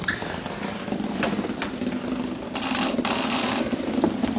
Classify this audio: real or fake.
real